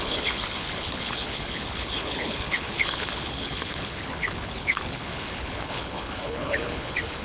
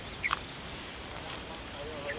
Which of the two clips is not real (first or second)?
first